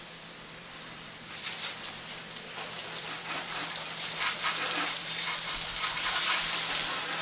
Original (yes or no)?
no